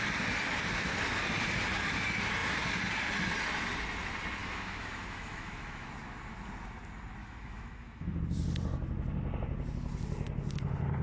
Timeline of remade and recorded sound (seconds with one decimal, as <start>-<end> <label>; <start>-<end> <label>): 0.0-4.4 recorded; 4.4-5.9 remade; 5.9-7.2 recorded; 7.2-8.2 remade; 8.2-11.0 recorded